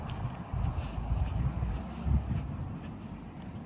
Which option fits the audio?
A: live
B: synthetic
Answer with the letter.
A